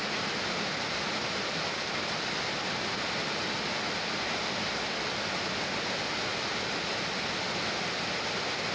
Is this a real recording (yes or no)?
yes